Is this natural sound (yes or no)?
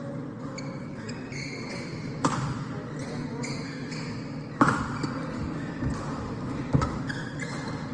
yes